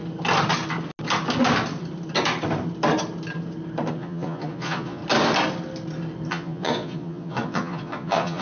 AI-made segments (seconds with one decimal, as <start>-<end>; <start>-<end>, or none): 3.9-5.0; 6.3-8.4